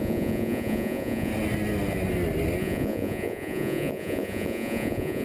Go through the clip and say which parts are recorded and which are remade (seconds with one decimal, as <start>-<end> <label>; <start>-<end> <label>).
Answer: 0.0-1.3 remade; 1.3-2.6 recorded; 2.6-5.2 remade